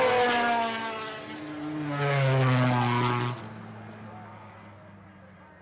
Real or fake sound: real